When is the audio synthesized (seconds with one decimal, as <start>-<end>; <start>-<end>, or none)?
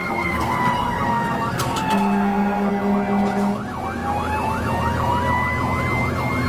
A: 0.0-2.7